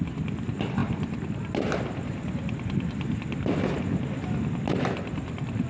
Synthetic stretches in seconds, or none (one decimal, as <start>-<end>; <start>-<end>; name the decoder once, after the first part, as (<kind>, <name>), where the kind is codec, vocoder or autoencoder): none